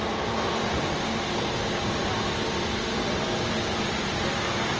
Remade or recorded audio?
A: remade